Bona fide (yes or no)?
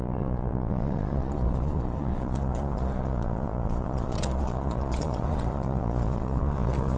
no